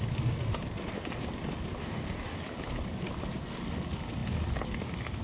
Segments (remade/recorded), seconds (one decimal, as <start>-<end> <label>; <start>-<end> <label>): 0.0-1.8 recorded; 1.8-2.4 remade; 2.4-5.2 recorded

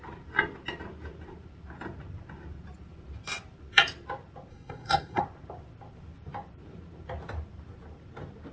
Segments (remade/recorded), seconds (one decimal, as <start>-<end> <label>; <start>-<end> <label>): 0.0-4.5 recorded; 4.5-5.2 remade; 5.2-8.5 recorded